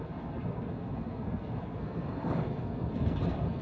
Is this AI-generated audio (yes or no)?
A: yes